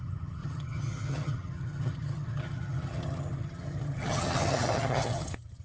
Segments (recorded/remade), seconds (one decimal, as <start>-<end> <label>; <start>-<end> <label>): 0.0-5.6 remade